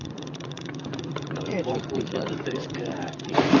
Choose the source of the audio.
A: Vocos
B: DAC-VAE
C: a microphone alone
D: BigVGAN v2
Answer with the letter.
A